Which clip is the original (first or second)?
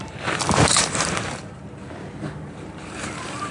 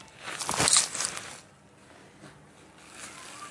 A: second